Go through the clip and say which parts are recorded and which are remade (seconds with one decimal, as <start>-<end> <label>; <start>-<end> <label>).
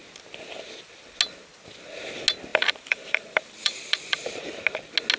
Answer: 0.0-2.5 recorded; 2.5-4.4 remade; 4.4-5.2 recorded